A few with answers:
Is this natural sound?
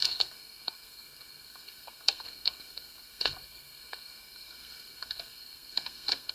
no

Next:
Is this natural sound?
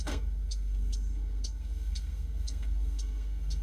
no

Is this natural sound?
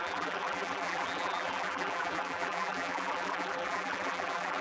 no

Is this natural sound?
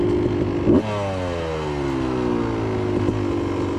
yes